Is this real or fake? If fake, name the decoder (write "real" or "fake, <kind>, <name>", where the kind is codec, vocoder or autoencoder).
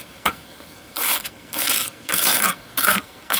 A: fake, codec, SNAC